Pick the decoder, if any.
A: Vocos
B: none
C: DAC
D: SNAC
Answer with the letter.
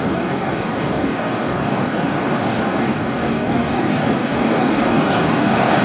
C